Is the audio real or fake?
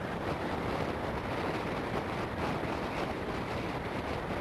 fake